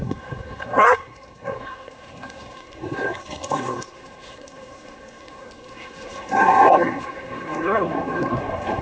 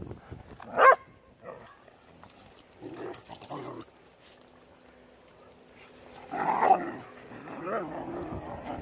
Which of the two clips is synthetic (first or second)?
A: first